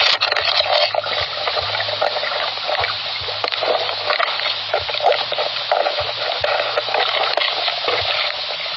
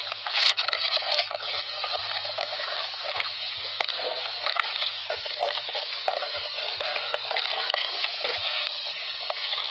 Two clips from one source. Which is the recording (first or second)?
first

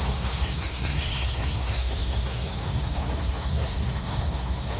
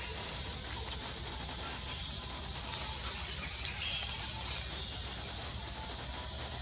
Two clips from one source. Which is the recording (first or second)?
second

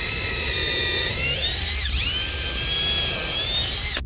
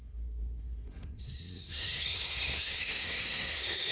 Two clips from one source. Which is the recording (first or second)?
first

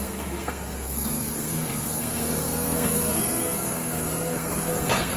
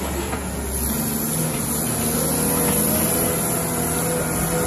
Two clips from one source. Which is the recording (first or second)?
second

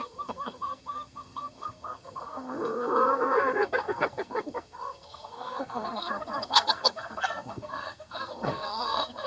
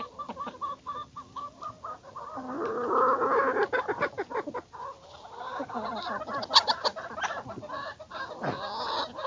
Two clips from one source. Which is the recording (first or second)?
second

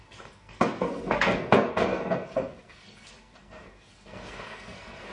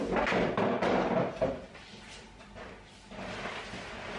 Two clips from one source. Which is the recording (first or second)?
second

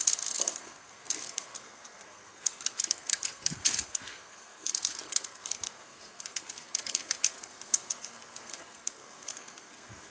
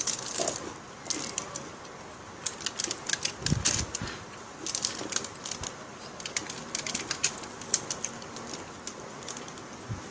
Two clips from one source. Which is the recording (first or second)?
second